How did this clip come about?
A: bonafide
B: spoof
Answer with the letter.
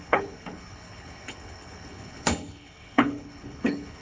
B